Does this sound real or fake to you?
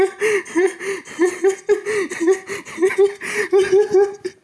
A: real